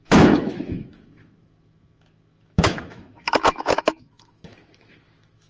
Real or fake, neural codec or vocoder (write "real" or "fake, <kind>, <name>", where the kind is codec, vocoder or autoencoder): fake, autoencoder, DAC-VAE